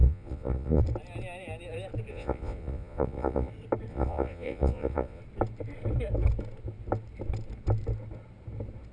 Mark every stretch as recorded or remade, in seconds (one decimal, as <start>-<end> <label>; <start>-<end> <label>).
0.0-0.8 remade; 0.8-2.1 recorded; 2.1-3.5 remade; 3.5-3.9 recorded; 3.9-5.2 remade; 5.2-8.9 recorded